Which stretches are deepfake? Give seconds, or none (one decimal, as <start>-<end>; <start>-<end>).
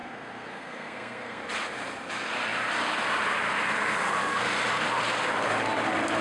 0.0-1.4